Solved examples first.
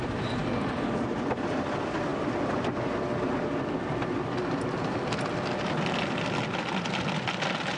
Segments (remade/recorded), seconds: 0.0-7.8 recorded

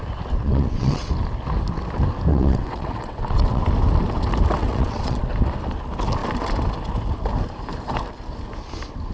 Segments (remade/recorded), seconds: 0.0-0.4 recorded; 0.4-1.1 remade; 1.1-2.3 recorded; 2.3-3.6 remade; 3.6-4.6 recorded; 4.6-5.2 remade; 5.2-9.1 recorded

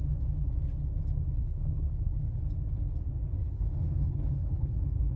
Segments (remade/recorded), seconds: 0.0-1.4 recorded; 1.4-2.4 remade; 2.4-3.4 recorded; 3.4-4.8 remade; 4.8-5.2 recorded

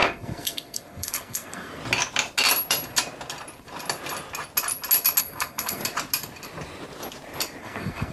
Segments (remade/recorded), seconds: 0.0-1.8 remade; 1.8-5.2 recorded; 5.2-5.8 remade; 5.8-7.6 recorded; 7.6-8.1 remade

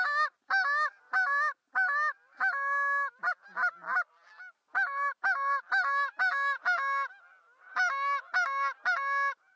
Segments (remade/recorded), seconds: 0.0-9.6 recorded

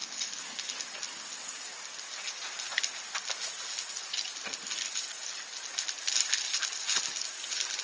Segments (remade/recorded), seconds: 0.0-7.8 recorded

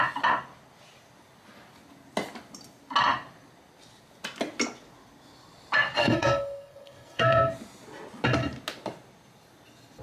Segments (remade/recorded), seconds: 0.0-6.0 recorded; 6.0-7.5 remade; 7.5-10.0 recorded

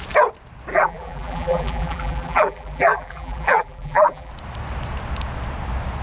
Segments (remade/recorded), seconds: 0.0-0.7 recorded; 0.7-4.3 remade; 4.3-6.0 recorded